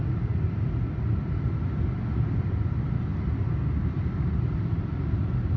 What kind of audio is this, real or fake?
real